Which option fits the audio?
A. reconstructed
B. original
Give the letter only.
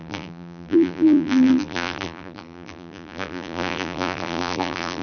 A